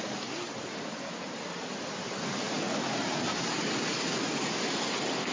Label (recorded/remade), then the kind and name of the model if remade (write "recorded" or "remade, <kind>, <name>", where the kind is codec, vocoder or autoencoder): recorded